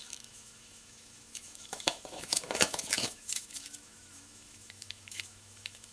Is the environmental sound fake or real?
fake